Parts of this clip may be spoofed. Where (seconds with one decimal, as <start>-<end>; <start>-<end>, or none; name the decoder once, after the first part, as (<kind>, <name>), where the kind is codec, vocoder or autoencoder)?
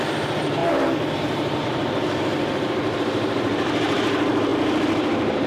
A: 0.0-5.5 (vocoder, BigVGAN v2)